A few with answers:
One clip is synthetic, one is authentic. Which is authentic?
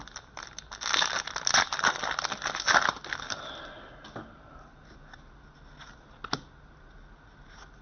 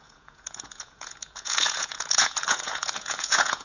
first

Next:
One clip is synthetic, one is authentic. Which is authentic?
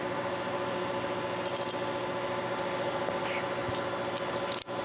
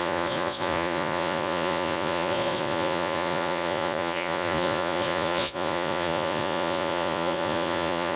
first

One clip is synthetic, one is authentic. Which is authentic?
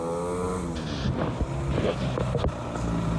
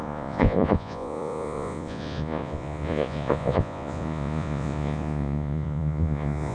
first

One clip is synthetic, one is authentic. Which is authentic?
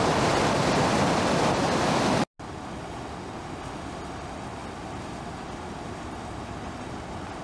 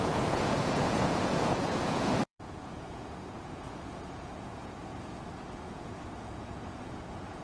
first